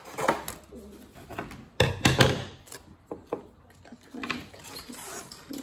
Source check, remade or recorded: recorded